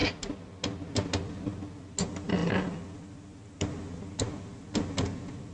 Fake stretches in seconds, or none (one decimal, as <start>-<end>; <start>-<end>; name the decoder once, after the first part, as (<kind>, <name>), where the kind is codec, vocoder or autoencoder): none